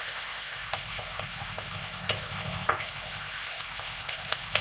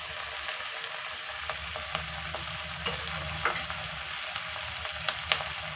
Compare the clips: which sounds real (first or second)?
second